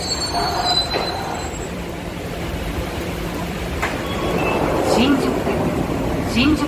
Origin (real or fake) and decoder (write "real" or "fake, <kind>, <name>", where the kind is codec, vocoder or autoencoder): fake, vocoder, BigVGAN v2